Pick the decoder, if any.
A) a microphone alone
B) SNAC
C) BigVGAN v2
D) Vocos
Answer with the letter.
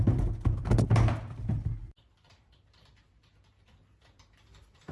C